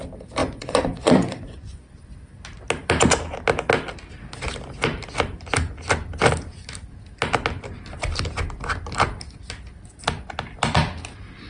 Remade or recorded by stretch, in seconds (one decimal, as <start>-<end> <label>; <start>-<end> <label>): 0.0-0.4 recorded; 0.4-1.8 remade; 1.8-11.5 recorded